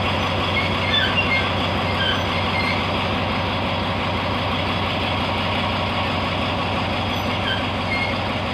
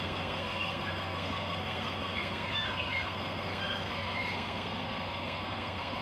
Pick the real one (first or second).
first